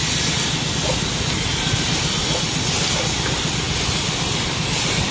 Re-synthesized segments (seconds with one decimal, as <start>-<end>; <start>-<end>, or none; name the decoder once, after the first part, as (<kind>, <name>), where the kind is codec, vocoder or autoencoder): none